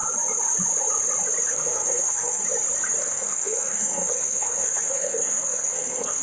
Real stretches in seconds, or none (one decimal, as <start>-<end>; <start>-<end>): 0.0-1.5; 2.4-3.0

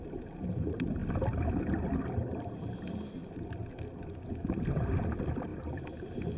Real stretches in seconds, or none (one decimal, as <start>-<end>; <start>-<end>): 1.0-4.8

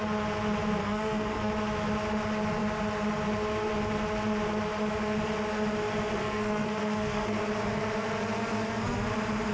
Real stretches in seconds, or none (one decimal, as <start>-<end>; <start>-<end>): 0.0-0.8; 1.5-6.2; 7.4-9.5